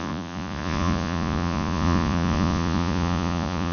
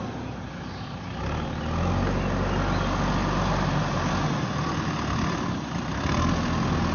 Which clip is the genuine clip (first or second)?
second